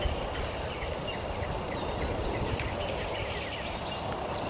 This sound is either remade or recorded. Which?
recorded